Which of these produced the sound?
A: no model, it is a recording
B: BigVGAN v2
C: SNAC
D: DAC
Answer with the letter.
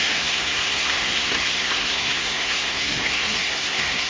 C